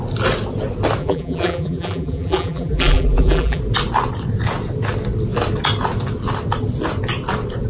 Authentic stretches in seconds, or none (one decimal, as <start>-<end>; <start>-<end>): 0.0-1.0; 3.6-7.7